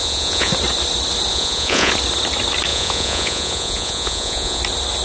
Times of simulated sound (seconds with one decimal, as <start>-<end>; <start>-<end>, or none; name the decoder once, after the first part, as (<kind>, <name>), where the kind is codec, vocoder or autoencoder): 0.0-0.5 (vocoder, Vocos); 1.3-1.9; 2.7-4.6